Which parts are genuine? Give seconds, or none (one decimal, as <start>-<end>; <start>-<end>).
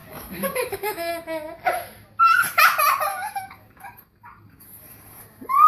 1.1-3.1; 5.2-5.7